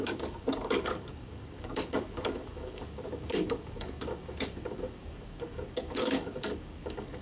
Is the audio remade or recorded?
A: remade